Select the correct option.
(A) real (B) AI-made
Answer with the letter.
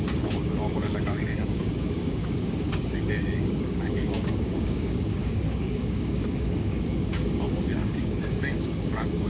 B